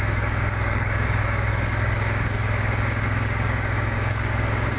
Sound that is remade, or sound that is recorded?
remade